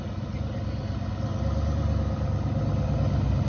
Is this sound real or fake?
real